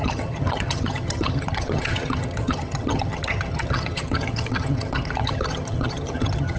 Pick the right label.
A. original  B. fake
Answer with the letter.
B